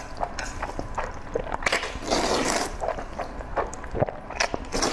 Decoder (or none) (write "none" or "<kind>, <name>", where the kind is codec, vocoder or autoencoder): vocoder, BigVGAN v2